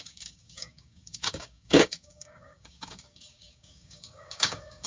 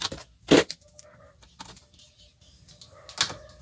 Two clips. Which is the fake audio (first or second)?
first